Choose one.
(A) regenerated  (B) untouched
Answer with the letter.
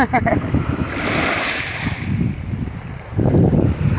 B